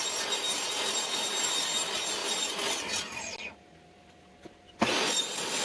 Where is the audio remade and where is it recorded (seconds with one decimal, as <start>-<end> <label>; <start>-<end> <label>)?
0.0-5.6 recorded